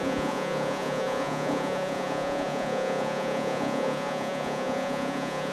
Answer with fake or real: fake